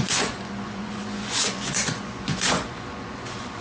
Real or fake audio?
fake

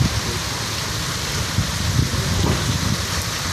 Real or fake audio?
real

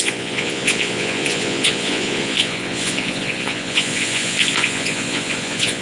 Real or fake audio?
fake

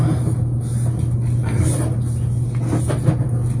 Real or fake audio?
real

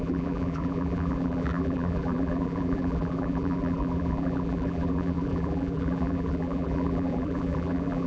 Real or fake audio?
fake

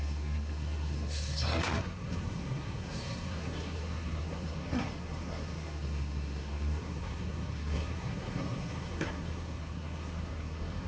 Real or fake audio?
fake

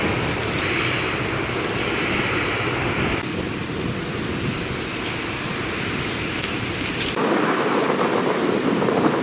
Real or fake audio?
real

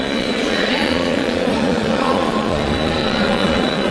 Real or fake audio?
fake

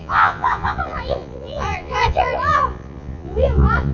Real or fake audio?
fake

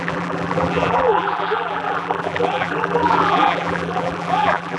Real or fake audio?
fake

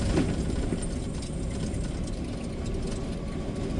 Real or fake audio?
real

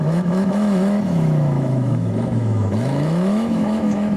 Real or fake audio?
fake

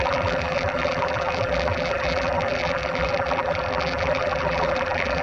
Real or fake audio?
fake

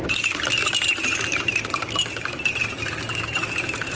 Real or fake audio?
real